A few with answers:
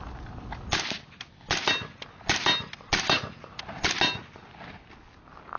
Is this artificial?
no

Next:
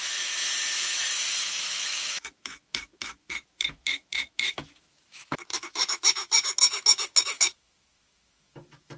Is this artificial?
yes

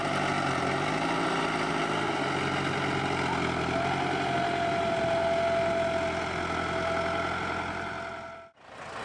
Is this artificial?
no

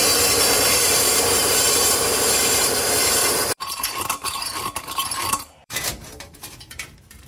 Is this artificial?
yes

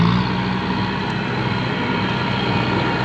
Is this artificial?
no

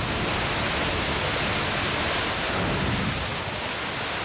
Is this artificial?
no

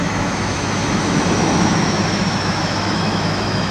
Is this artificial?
yes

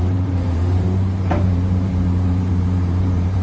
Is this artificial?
yes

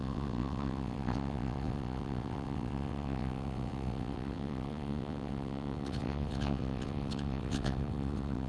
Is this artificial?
yes